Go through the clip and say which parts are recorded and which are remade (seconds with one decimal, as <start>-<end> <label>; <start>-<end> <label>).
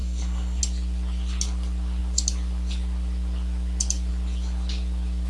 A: 0.0-0.6 remade; 0.6-5.3 recorded